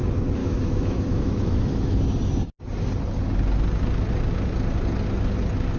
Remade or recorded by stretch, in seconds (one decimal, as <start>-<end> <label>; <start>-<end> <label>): 0.0-0.4 recorded; 0.4-2.0 remade; 2.0-5.8 recorded